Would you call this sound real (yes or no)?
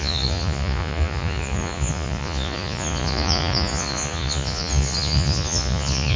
no